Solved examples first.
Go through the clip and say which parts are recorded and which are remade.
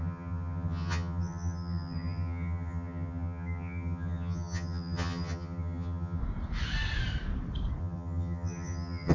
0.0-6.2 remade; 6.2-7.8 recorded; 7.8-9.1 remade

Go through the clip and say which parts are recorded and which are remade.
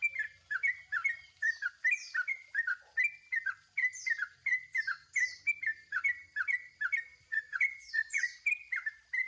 0.0-7.1 recorded; 7.1-8.3 remade; 8.3-9.3 recorded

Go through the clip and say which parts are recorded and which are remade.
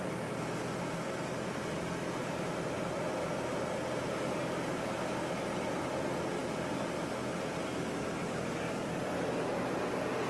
0.0-10.3 recorded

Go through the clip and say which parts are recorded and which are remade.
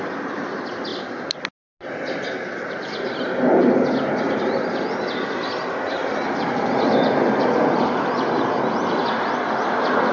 0.0-10.1 recorded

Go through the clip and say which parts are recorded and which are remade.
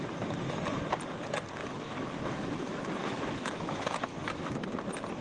0.0-1.6 recorded; 1.6-4.7 remade; 4.7-5.2 recorded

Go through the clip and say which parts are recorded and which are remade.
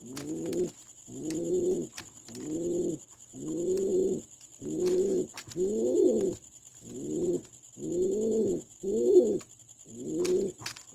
0.0-10.9 recorded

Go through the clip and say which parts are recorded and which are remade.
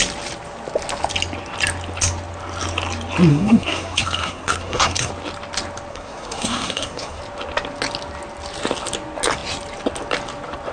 0.0-3.3 recorded; 3.3-5.1 remade; 5.1-5.9 recorded; 5.9-7.2 remade; 7.2-10.7 recorded